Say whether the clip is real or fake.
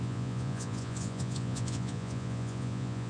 fake